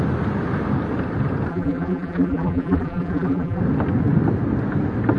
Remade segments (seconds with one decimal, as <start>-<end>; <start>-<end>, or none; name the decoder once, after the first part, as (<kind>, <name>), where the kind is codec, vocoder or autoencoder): 1.5-3.6 (vocoder, BigVGAN v2)

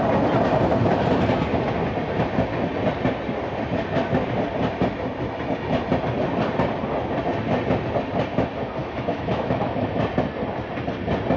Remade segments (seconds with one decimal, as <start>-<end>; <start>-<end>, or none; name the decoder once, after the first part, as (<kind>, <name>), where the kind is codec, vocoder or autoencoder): 8.8-10.0 (autoencoder, DAC-VAE)

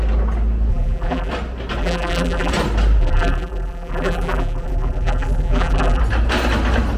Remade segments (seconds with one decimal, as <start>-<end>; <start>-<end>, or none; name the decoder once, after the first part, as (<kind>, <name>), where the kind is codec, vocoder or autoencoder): 0.7-1.3 (vocoder, BigVGAN v2); 1.8-2.5; 3.0-6.0